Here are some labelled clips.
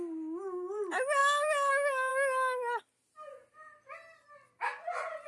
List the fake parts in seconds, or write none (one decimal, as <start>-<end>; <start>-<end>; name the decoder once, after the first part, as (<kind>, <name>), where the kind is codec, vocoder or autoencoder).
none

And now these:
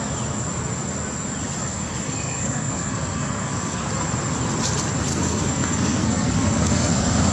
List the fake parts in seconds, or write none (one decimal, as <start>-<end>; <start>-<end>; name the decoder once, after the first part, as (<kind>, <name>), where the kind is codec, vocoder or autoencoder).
1.7-3.9 (codec, SNAC); 5.1-7.3

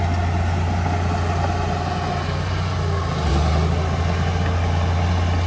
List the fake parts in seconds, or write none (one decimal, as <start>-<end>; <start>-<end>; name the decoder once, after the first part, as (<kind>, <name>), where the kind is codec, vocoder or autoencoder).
none

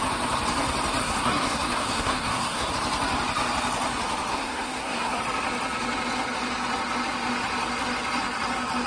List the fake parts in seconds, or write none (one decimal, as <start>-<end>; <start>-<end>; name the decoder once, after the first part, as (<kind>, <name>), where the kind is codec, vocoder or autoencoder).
1.0-2.7 (codec, SNAC); 4.3-5.2

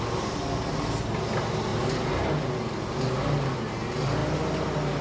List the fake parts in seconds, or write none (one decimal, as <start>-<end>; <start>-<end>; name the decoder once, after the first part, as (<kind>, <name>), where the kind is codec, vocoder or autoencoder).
none

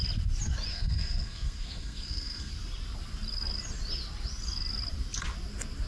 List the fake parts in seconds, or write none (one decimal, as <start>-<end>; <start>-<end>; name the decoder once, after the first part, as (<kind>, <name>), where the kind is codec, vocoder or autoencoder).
0.7-2.5 (codec, SNAC)

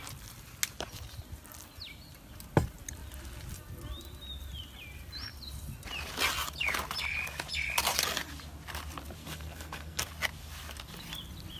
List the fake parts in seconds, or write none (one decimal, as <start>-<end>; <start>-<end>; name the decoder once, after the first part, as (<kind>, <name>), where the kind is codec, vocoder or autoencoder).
9.2-10.1 (codec, SNAC)